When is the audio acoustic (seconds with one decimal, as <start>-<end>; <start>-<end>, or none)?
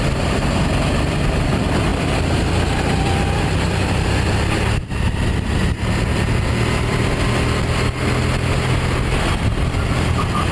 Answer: 0.0-10.5